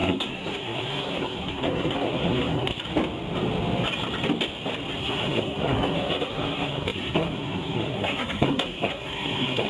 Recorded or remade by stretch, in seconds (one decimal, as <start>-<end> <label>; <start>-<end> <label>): 0.0-2.7 remade; 2.7-5.0 recorded; 5.0-9.7 remade